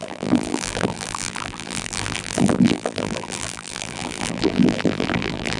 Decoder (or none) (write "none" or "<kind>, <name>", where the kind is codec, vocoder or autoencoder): vocoder, BigVGAN v2